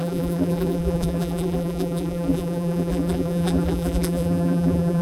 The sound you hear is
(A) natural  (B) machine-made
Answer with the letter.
B